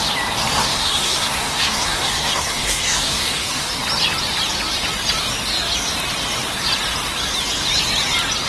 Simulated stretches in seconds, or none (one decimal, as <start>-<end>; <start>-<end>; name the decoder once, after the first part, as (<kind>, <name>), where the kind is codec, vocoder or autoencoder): 0.5-3.7 (codec, SNAC)